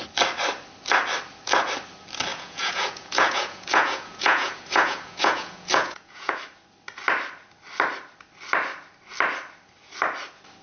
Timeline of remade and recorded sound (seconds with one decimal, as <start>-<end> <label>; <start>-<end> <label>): 0.0-2.3 recorded; 2.3-6.4 remade; 6.4-10.6 recorded